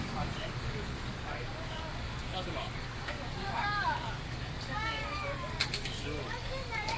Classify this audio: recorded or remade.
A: remade